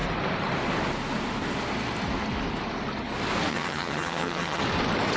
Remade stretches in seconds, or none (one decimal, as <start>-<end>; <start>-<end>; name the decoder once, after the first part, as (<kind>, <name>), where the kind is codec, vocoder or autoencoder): 3.5-4.6 (vocoder, HiFi-GAN)